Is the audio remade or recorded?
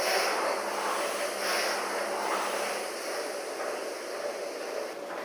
recorded